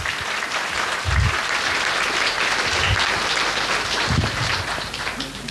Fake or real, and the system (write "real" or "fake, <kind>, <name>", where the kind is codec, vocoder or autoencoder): real